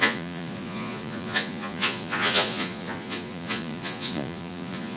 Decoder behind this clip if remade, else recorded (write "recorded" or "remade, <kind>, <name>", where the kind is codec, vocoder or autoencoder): remade, vocoder, Vocos